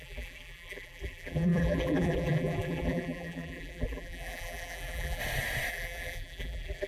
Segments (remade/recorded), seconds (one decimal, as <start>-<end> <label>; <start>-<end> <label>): 0.0-5.2 remade; 5.2-5.7 recorded; 5.7-6.9 remade